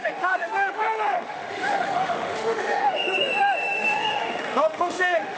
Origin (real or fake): fake